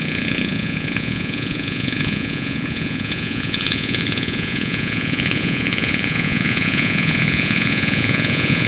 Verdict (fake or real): fake